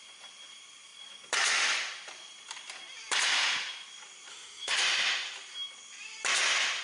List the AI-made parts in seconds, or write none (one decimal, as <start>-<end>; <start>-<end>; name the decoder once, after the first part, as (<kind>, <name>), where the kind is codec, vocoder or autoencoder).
4.3-4.8 (autoencoder, DAC-VAE)